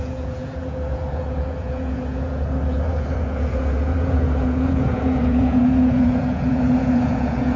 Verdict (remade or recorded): remade